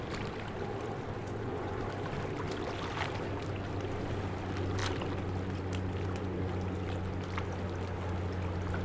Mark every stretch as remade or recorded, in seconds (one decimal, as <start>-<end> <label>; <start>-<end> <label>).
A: 0.0-1.2 recorded; 1.2-1.8 remade; 1.8-8.8 recorded